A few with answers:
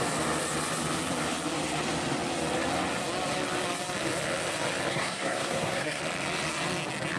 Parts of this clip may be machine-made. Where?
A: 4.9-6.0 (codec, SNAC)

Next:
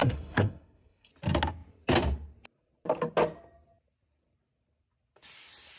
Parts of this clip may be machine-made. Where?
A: 0.0-1.1 (codec, SNAC)

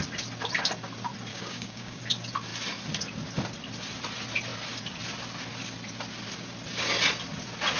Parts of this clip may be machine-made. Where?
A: 1.3-2.0 (codec, DAC)

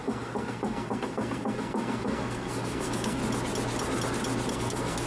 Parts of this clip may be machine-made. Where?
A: 0.0-3.2 (codec, SNAC); 4.5-5.1

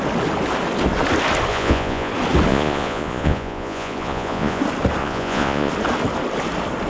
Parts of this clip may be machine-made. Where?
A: 1.5-2.1 (vocoder, Vocos); 2.5-4.6; 5.0-5.7